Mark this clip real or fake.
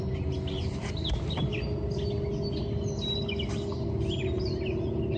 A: real